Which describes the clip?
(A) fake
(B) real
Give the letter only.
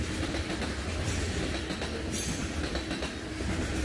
B